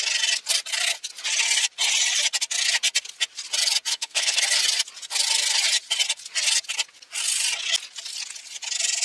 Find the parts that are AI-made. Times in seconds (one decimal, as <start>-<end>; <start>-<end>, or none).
3.9-4.4